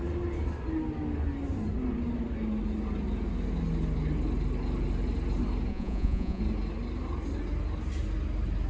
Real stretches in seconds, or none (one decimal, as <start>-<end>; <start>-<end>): 0.0-5.7; 6.4-8.7